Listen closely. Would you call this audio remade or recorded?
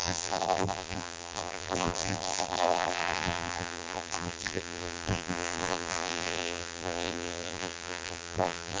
remade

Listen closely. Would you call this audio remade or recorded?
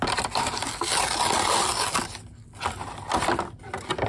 recorded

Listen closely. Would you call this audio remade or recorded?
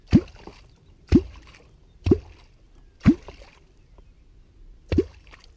recorded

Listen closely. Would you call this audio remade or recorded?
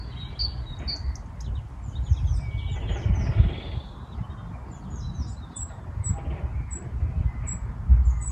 recorded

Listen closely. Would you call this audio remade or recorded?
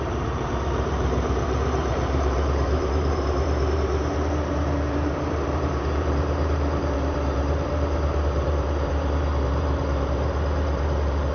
remade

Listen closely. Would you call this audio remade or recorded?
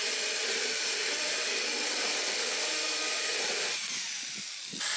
recorded